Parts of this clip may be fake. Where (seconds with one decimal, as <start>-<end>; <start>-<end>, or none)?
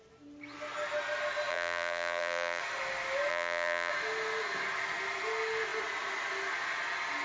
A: 1.5-2.6; 3.3-3.9